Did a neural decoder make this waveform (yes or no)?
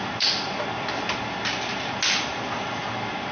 no